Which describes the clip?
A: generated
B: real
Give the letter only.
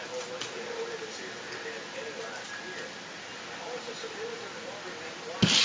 B